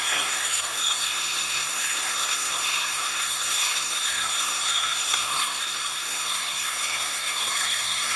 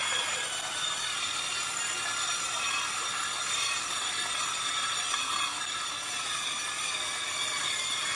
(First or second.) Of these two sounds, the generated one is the first